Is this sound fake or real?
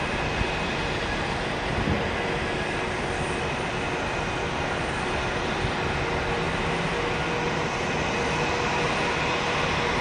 real